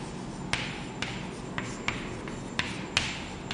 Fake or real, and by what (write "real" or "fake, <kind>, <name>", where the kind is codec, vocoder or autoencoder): real